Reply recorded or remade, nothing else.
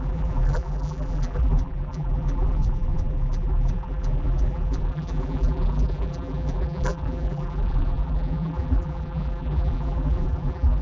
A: remade